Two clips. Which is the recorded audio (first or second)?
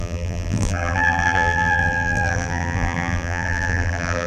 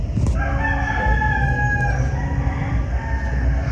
second